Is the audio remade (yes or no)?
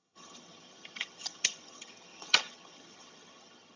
yes